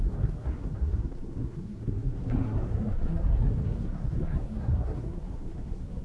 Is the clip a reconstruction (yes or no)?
yes